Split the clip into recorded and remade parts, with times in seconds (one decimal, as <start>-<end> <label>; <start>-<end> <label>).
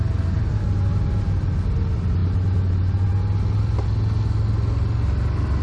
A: 0.0-5.6 recorded